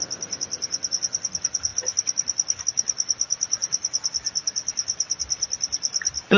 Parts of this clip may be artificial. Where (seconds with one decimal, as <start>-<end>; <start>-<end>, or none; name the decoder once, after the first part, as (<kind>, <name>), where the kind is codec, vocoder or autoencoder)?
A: none